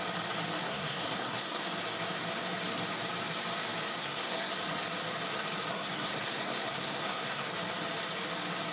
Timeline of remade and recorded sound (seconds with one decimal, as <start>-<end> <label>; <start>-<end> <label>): 0.0-0.6 recorded; 0.6-1.7 remade; 1.7-4.0 recorded; 4.0-4.5 remade; 4.5-5.7 recorded; 5.7-7.5 remade; 7.5-8.7 recorded